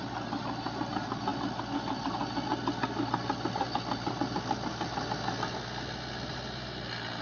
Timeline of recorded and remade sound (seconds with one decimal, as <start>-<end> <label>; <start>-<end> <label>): 0.0-7.2 recorded